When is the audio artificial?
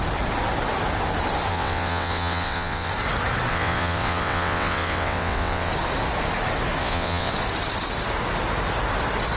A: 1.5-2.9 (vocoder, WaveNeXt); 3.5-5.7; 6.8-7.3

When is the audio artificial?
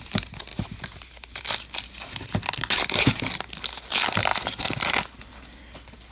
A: none